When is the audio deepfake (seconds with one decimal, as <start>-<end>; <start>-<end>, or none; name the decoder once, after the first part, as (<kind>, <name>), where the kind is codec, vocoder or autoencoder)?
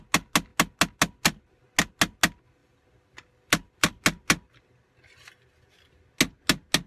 2.6-4.0 (vocoder, BigVGAN v2)